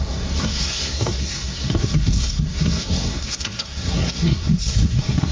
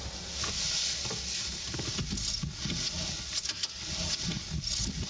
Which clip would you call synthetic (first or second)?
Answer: first